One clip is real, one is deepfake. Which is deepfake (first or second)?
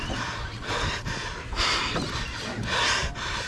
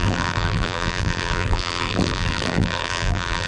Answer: second